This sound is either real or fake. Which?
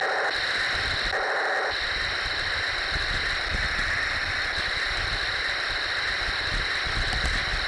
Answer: real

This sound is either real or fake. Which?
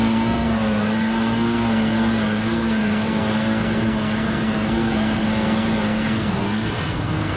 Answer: fake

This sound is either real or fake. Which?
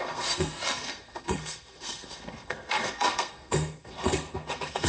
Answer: fake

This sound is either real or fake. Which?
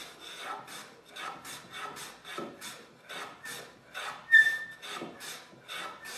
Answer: real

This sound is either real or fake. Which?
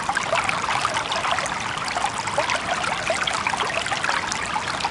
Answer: real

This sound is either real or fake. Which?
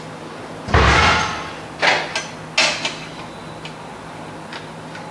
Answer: real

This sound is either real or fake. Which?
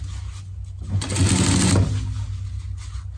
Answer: real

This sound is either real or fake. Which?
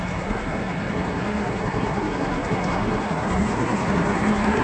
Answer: fake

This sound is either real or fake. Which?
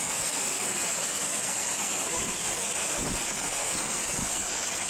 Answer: fake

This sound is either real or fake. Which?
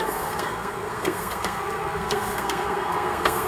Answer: fake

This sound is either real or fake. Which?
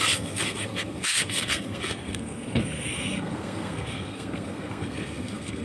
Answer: fake